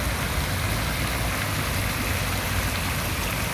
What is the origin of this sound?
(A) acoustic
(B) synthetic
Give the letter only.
A